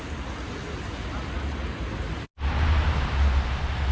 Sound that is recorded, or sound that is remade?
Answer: recorded